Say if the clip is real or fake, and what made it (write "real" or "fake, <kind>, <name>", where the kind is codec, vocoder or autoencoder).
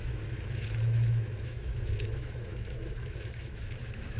fake, autoencoder, DAC-VAE